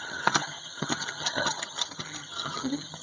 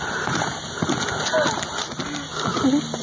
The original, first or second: second